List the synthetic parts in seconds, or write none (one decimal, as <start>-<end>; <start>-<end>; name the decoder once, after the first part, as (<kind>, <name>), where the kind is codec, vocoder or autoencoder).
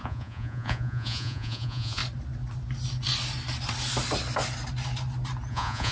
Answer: 0.0-2.0 (vocoder, Vocos); 5.5-5.9